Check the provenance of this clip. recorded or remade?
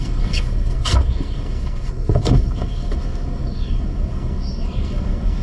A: remade